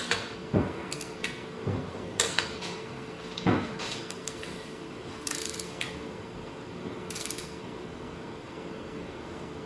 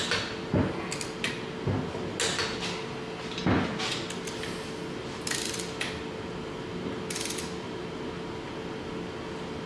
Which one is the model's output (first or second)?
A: first